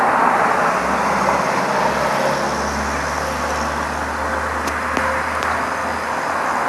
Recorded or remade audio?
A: recorded